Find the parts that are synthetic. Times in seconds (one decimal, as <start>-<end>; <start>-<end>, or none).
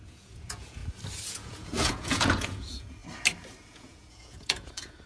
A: 0.0-0.8; 1.3-3.0; 3.6-5.1